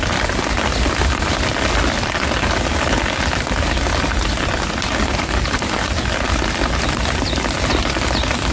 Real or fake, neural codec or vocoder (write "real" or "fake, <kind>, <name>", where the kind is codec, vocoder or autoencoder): real